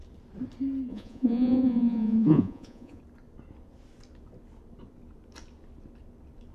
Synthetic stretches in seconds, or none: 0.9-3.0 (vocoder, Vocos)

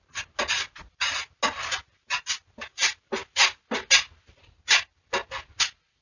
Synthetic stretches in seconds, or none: none